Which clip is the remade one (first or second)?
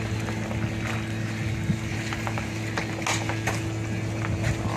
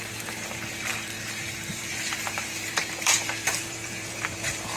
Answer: second